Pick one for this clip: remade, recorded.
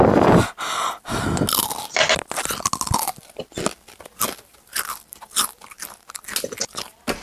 recorded